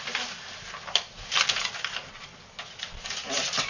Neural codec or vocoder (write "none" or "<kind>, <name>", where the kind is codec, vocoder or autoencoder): none